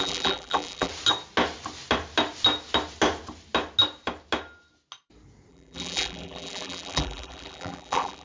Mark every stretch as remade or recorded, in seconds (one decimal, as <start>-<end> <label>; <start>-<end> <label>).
0.0-0.9 remade; 0.9-5.5 recorded; 5.5-8.2 remade